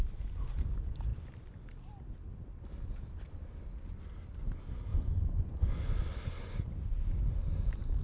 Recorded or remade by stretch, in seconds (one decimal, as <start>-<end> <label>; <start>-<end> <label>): 0.0-4.9 recorded; 4.9-6.0 remade; 6.0-8.0 recorded